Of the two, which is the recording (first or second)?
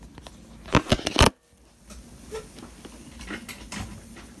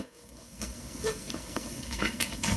first